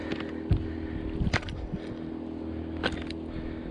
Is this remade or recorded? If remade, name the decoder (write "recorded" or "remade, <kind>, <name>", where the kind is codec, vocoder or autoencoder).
recorded